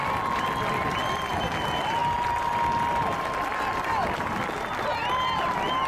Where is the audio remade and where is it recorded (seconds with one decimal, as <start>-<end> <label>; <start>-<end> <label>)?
0.0-5.9 recorded